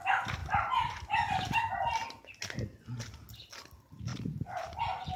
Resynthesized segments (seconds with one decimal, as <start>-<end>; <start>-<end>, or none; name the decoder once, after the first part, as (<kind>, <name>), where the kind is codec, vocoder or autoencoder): 0.4-1.6 (vocoder, BigVGAN v2); 4.1-4.8